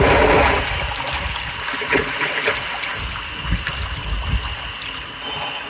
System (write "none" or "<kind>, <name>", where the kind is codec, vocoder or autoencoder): none